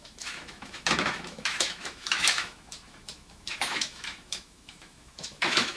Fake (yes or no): yes